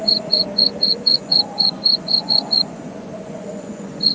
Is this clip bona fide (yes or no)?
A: no